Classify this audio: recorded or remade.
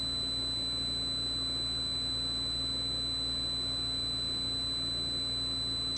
recorded